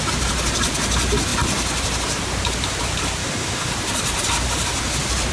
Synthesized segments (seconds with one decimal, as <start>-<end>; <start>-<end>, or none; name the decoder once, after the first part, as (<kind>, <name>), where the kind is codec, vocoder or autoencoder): 3.2-3.7 (autoencoder, DAC-VAE)